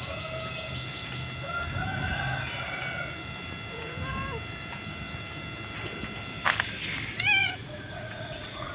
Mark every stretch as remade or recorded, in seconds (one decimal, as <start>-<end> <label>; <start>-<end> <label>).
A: 0.0-7.4 recorded; 7.4-8.7 remade